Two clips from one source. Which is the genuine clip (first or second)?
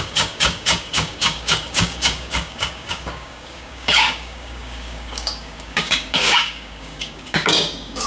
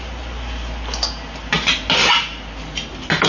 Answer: second